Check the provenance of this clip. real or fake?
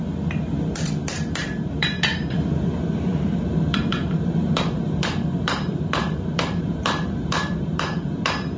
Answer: fake